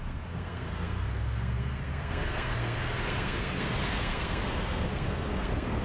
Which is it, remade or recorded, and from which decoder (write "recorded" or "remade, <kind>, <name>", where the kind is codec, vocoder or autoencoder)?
remade, codec, SNAC